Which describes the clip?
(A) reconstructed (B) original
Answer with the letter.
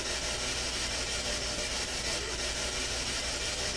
B